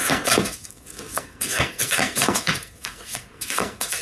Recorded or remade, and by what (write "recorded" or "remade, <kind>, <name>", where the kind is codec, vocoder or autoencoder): remade, codec, SNAC